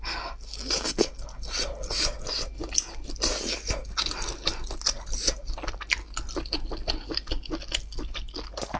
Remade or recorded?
recorded